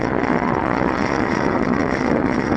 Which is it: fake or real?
fake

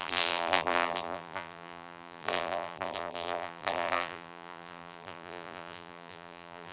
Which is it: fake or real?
fake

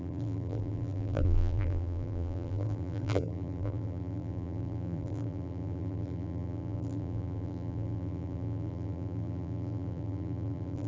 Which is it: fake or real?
fake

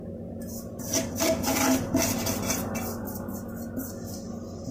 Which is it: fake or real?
real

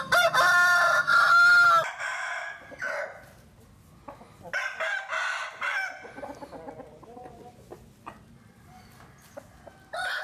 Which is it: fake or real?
real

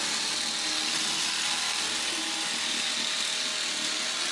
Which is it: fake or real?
real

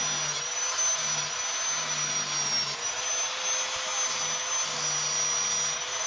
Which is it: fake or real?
real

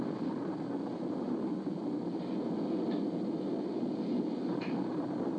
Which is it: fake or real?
real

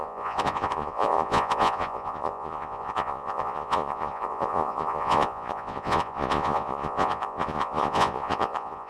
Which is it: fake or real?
fake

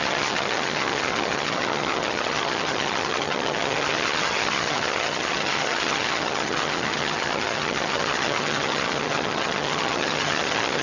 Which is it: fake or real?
fake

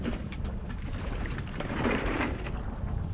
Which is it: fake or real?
fake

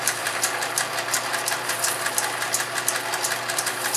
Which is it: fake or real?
fake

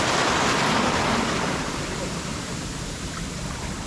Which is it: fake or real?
fake